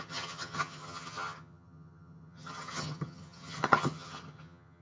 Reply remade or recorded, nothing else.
remade